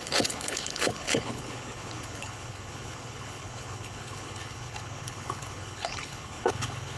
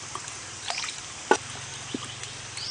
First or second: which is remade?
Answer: first